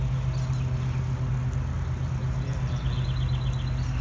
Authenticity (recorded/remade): recorded